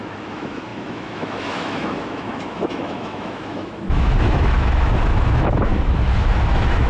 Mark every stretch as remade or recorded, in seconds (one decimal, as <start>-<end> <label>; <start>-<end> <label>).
0.0-6.9 remade